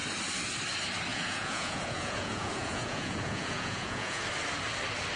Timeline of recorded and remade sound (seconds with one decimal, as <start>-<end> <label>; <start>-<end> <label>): 0.0-1.1 recorded; 1.1-4.2 remade; 4.2-5.2 recorded